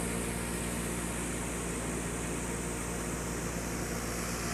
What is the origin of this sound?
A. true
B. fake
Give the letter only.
A